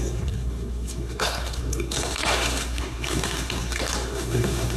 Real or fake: fake